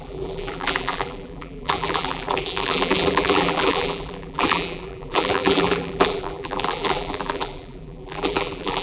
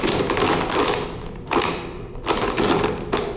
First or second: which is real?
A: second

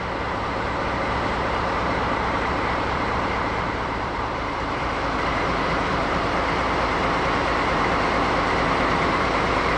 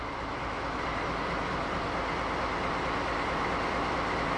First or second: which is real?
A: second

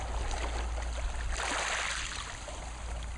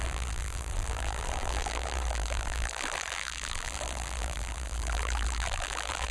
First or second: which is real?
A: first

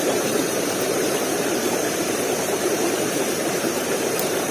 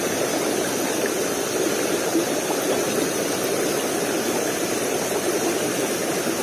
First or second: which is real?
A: second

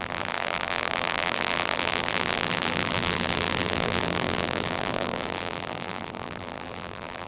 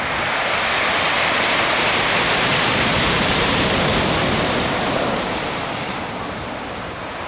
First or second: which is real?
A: second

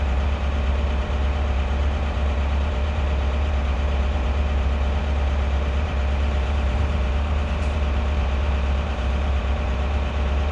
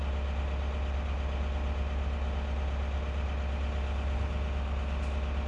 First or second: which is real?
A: second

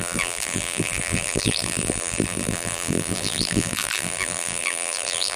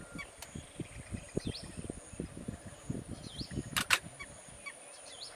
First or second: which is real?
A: second